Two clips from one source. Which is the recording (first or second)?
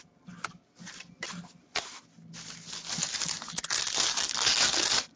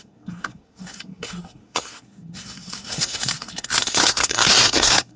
first